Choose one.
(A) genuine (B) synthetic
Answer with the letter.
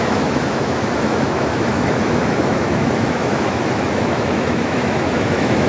B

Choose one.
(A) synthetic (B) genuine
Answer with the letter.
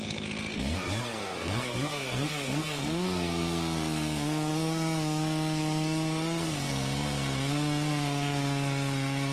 A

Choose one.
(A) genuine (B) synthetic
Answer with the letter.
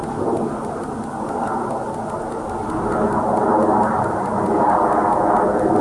A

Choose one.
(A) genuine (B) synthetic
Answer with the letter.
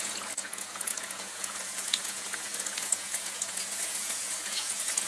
B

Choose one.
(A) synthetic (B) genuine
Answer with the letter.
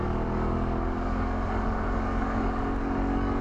A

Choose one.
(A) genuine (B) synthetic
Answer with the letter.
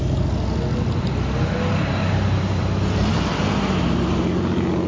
A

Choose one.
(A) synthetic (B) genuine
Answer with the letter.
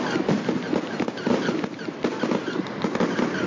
B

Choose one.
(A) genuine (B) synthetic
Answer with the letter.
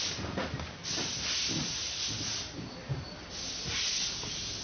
A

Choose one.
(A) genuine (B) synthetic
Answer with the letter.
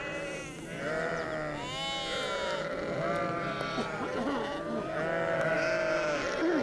A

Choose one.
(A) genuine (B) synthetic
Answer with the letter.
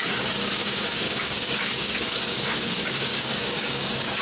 B